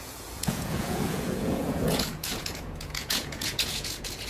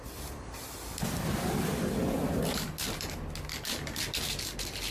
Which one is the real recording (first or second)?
second